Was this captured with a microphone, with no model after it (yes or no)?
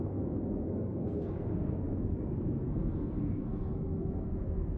no